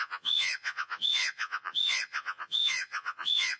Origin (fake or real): fake